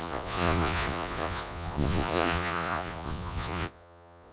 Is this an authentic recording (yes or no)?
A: no